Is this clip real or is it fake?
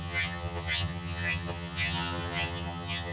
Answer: fake